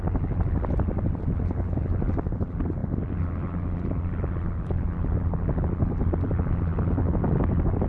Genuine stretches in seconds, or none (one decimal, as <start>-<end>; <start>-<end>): 0.0-7.9